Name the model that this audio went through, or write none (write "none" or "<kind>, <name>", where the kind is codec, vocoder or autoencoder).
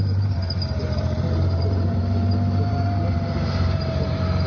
vocoder, BigVGAN v2